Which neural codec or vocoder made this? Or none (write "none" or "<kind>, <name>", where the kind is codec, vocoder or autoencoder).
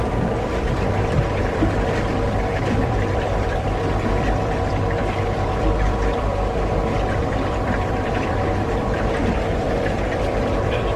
vocoder, BigVGAN v2